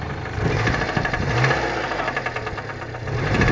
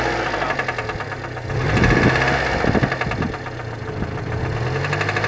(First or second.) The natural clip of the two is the second